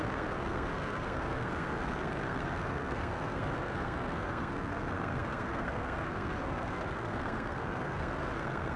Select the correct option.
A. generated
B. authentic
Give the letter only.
A